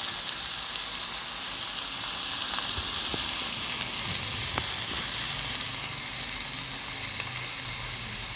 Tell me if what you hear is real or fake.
real